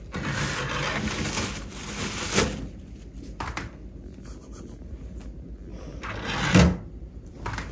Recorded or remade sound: recorded